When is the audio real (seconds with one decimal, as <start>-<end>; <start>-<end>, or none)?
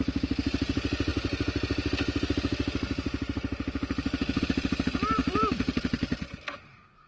0.0-5.2; 5.8-7.1